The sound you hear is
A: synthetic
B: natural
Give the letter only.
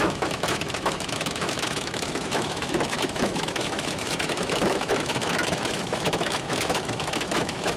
A